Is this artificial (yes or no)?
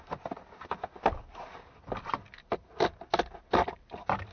no